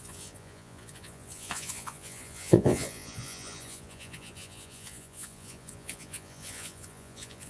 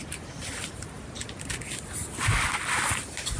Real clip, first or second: second